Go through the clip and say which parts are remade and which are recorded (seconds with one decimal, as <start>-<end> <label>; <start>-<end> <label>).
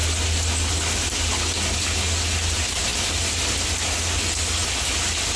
0.0-5.4 recorded